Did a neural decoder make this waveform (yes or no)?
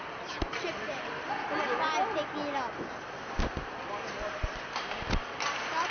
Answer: no